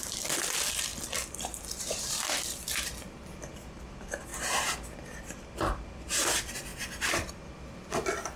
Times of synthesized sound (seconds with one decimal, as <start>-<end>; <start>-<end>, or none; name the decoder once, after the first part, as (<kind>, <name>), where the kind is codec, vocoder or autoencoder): 0.0-4.3 (vocoder, BigVGAN v2); 5.2-8.4